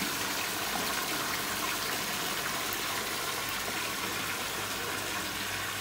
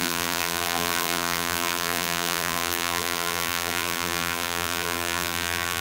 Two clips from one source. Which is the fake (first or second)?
second